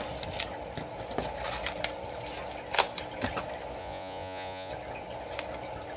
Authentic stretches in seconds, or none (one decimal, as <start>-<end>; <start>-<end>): 0.0-3.8; 4.7-6.0

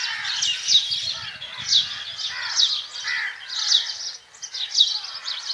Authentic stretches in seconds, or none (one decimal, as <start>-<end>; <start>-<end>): 0.0-5.5

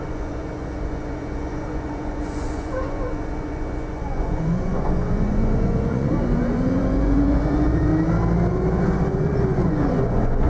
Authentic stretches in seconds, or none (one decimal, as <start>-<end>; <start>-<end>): 7.9-8.5

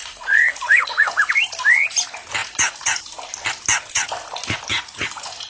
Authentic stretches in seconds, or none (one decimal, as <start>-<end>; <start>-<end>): 1.3-2.4; 3.0-4.7

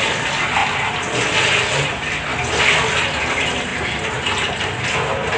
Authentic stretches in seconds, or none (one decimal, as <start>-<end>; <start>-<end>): 0.0-5.4